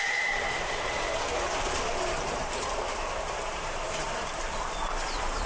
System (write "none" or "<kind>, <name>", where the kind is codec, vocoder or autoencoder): vocoder, BigVGAN v2